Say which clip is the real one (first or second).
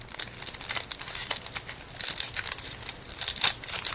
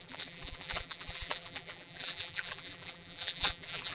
first